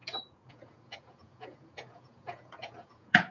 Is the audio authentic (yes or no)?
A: no